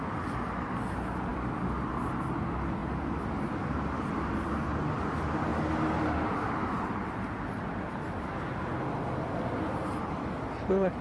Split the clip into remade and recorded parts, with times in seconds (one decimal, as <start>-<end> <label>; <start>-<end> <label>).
0.0-1.3 recorded; 1.3-1.9 remade; 1.9-11.0 recorded